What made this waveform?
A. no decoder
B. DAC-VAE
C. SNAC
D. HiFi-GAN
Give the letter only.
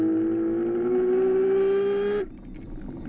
A